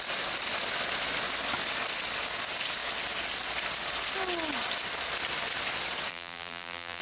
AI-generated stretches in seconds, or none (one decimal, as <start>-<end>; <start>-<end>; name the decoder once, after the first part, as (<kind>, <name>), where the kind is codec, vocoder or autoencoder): 6.1-7.0 (vocoder, BigVGAN v2)